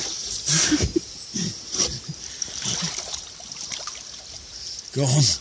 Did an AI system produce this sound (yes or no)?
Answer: no